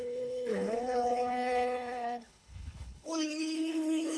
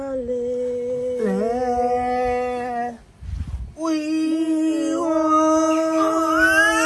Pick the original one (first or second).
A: second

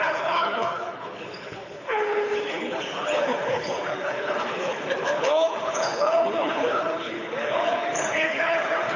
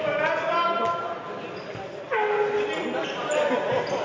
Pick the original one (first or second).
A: second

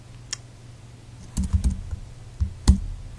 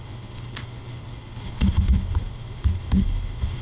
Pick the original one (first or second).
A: first